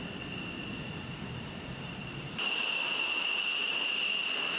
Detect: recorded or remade remade